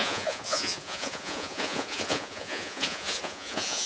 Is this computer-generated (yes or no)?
yes